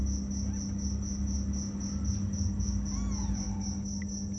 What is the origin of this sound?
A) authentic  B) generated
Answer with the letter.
A